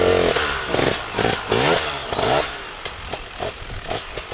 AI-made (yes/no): no